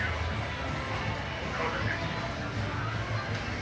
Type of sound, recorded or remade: recorded